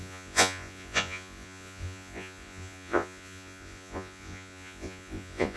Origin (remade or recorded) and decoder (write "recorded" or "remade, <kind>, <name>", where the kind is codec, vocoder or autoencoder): remade, vocoder, Vocos